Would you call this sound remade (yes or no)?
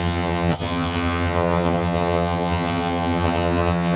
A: yes